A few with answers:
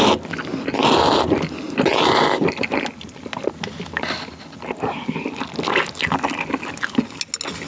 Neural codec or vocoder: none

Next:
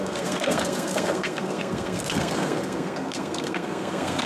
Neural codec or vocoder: codec, SNAC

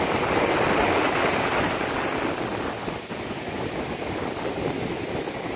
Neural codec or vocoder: none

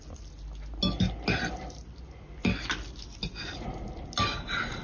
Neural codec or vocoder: none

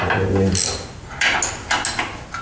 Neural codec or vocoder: none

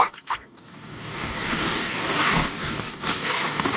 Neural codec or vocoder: codec, DAC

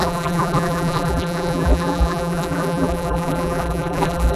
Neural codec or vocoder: vocoder, BigVGAN v2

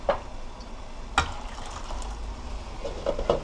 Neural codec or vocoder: none